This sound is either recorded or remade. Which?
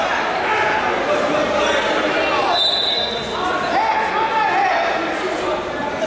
recorded